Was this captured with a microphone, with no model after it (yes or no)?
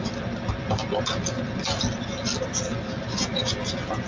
yes